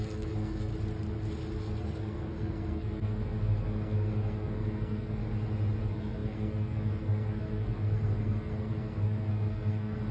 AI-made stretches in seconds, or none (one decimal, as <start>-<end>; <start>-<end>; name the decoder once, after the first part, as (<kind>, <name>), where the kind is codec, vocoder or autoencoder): 0.0-0.7 (codec, SNAC); 1.8-5.2; 5.8-10.1

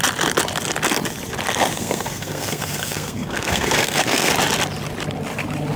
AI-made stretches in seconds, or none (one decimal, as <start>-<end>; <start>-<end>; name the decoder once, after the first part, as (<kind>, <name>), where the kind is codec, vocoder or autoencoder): 1.7-4.3 (codec, SNAC)

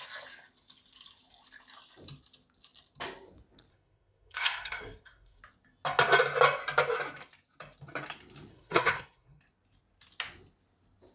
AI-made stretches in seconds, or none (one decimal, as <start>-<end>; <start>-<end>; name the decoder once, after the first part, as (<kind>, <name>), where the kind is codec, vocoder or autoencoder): 3.7-5.4 (codec, SNAC); 8.5-9.4